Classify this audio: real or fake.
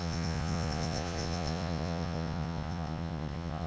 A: fake